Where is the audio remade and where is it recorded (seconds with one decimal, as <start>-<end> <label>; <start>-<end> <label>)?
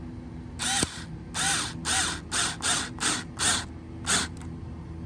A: 0.0-5.1 recorded